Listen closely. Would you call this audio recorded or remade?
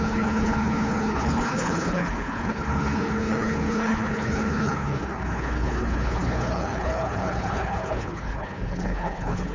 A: remade